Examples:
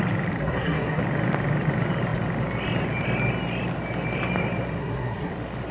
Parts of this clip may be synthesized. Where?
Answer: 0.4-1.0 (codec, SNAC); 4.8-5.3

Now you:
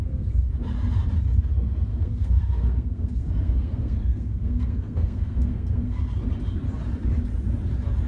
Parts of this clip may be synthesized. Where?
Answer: 0.0-0.5 (codec, SNAC); 1.9-6.0

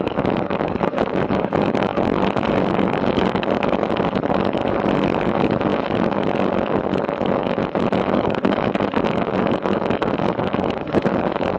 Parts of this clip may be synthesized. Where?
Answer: 0.0-4.6 (codec, DAC); 5.2-11.6

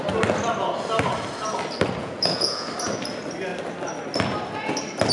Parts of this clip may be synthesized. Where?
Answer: 2.0-2.7 (vocoder, Vocos)

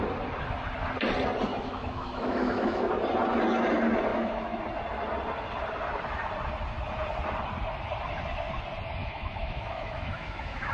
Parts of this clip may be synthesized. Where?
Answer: 1.5-2.9 (autoencoder, DAC-VAE); 4.1-4.6; 9.0-10.7